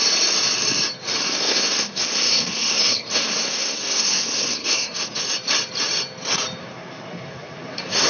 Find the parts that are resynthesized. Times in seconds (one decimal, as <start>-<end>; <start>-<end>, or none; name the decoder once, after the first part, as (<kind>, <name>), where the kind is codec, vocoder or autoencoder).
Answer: 1.2-5.2 (codec, SNAC); 6.6-8.1